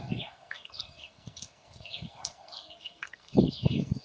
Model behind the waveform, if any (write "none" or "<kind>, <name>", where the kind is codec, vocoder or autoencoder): codec, SNAC